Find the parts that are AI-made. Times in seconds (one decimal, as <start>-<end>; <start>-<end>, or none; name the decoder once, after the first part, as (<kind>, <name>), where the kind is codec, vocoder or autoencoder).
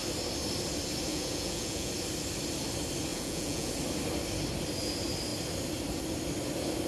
1.1-1.9 (vocoder, Vocos); 3.1-3.7